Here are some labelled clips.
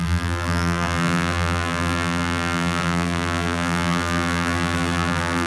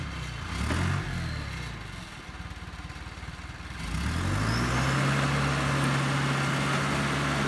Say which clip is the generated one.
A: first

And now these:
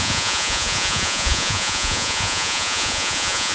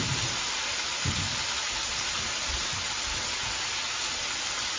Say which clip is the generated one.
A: first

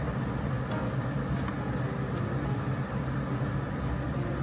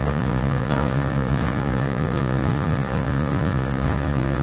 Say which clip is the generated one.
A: second